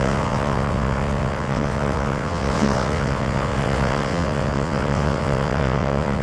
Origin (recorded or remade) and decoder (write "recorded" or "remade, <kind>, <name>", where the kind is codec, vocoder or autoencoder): remade, vocoder, WaveNeXt